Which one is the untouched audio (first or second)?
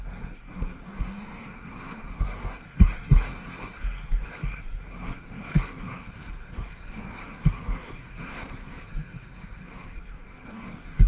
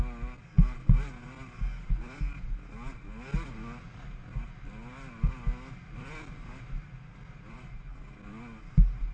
second